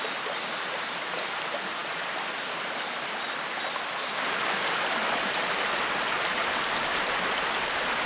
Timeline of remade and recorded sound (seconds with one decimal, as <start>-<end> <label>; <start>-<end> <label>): 0.0-8.1 recorded